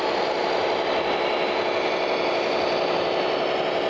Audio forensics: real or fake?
real